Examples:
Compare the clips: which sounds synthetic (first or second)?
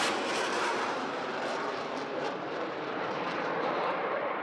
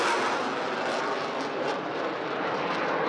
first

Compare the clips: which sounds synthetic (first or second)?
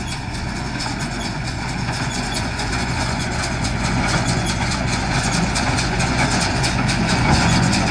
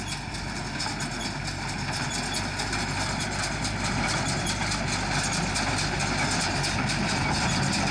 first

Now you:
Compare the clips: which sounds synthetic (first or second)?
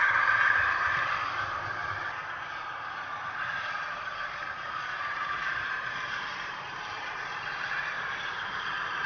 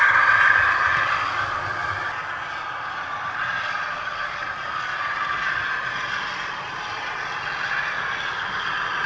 first